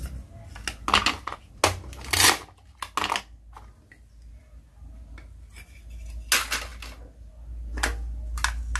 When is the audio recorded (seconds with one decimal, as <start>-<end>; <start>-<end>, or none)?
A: 0.0-8.8